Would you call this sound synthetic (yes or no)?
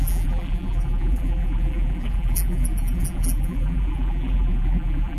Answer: yes